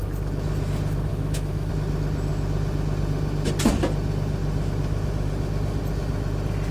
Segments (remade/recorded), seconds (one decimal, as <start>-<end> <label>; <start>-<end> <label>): 0.0-1.1 recorded; 1.1-1.7 remade; 1.7-6.7 recorded